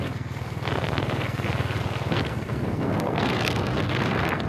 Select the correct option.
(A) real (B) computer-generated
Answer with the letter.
B